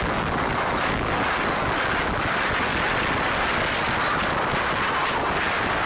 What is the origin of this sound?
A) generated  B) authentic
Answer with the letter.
B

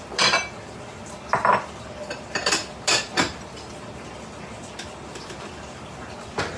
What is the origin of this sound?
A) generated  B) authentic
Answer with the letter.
B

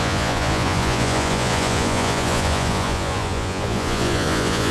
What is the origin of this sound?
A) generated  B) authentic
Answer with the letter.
A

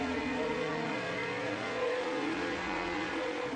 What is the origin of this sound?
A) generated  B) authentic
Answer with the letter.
A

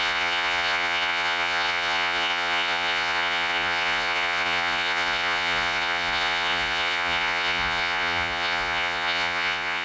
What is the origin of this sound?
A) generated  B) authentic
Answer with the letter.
A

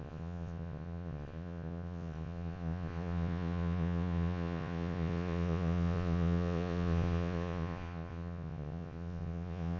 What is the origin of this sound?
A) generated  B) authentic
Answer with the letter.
A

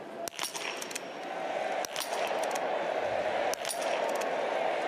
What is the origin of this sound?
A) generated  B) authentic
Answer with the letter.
B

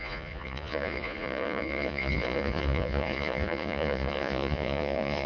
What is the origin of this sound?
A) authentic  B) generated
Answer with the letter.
B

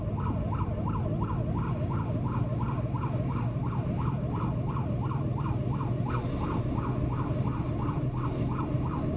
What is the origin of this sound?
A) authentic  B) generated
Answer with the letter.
A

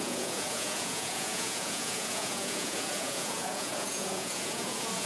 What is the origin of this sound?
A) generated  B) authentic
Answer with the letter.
A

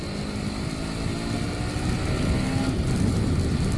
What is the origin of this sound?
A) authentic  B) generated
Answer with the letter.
A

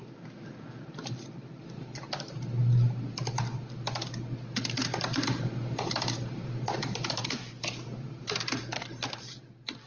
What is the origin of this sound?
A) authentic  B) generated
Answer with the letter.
A